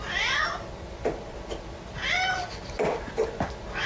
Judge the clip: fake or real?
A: real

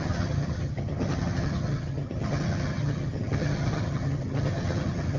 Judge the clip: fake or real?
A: fake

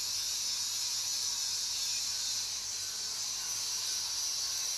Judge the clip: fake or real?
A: real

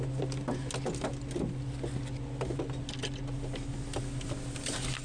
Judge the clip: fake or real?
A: real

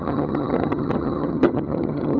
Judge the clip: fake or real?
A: fake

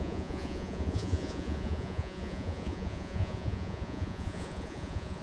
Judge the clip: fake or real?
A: fake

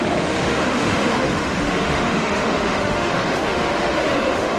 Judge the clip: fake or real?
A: fake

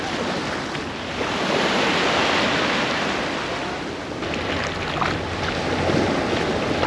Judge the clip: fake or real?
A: real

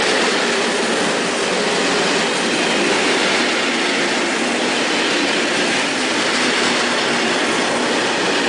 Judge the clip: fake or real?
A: real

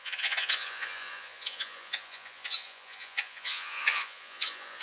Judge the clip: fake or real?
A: fake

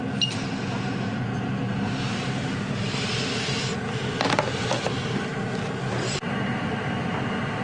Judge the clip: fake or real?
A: real